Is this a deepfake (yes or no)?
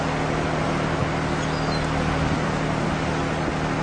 no